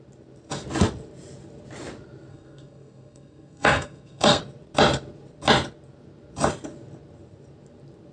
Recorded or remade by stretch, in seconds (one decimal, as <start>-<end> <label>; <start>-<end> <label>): 0.0-2.3 recorded; 2.3-4.4 remade; 4.4-8.1 recorded